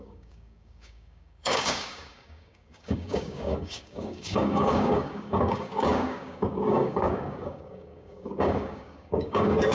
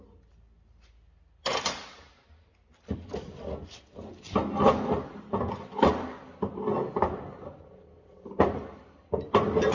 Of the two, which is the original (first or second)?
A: second